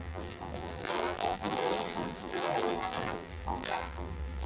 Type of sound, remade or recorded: remade